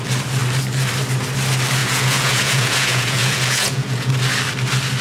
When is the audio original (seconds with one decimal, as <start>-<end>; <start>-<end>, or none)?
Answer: 0.0-1.8; 4.1-5.0

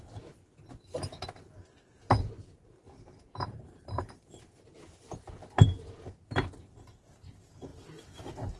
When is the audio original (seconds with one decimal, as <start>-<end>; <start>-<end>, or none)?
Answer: 0.0-2.8; 5.0-7.7; 8.2-8.6

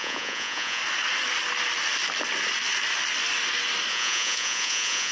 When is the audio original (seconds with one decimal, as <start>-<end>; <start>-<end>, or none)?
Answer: 0.8-3.9

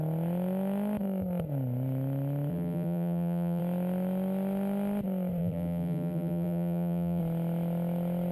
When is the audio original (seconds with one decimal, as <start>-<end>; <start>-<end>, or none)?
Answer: 0.0-2.5; 3.6-5.4; 7.2-8.3

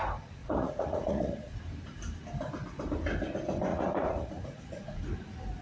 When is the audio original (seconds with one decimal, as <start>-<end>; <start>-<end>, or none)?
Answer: 0.0-0.4; 1.6-3.7; 5.0-5.6

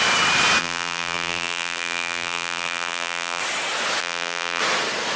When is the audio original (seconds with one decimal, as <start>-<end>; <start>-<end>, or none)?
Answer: 0.0-0.6; 3.4-4.0; 4.6-5.2

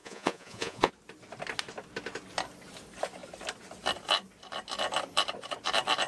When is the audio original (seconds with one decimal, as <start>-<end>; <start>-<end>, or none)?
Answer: 0.9-6.1